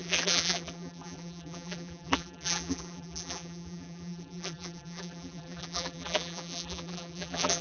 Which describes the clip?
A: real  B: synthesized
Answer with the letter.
B